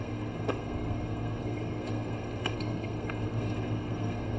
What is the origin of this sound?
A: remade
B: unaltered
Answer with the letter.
A